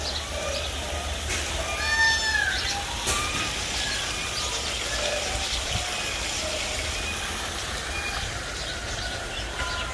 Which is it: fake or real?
real